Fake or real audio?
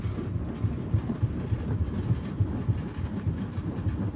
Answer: real